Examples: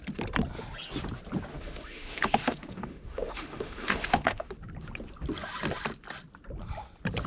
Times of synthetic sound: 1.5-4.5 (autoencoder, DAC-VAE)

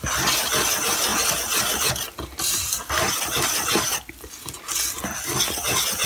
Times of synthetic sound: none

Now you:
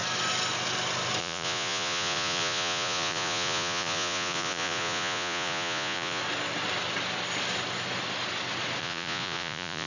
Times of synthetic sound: 1.2-6.2 (vocoder, Vocos); 8.8-9.9

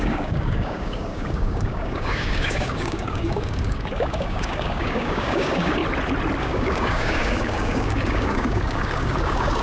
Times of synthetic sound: 0.0-5.8 (codec, DAC); 6.4-9.6